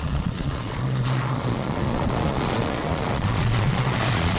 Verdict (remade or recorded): remade